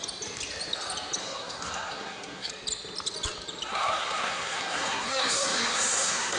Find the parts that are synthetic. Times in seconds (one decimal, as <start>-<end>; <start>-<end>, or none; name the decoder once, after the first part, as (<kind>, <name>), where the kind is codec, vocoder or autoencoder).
1.2-2.5 (codec, SNAC); 3.7-6.4